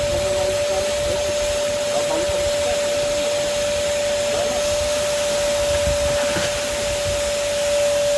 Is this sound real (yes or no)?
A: yes